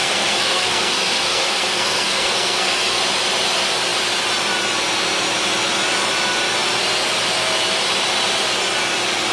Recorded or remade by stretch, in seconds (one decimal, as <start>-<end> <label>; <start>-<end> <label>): 0.0-3.0 remade; 3.0-9.3 recorded

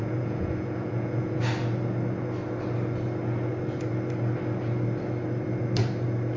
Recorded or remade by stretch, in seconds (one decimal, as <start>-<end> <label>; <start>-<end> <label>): 0.0-1.4 remade; 1.4-6.4 recorded

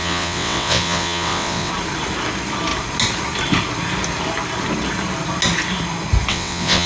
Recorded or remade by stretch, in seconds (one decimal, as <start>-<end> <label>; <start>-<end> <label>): 0.0-1.7 remade; 1.7-6.3 recorded; 6.3-6.9 remade

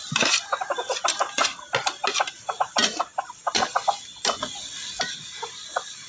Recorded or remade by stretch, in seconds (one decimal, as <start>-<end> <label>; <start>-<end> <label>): 0.0-1.5 remade; 1.5-2.4 recorded; 2.4-4.4 remade; 4.4-5.0 recorded; 5.0-6.1 remade

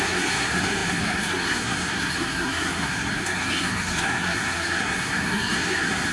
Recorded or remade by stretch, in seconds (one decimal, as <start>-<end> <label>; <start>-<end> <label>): 0.0-6.1 remade

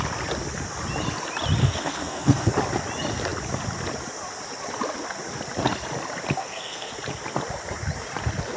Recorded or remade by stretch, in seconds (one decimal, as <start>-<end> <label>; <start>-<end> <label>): 0.0-1.6 recorded; 1.6-2.5 remade; 2.5-6.4 recorded; 6.4-6.9 remade; 6.9-8.6 recorded